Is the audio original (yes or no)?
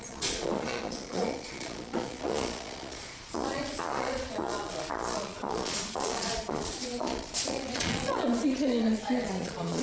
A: no